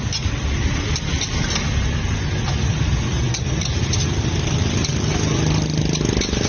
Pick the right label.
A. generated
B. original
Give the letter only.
B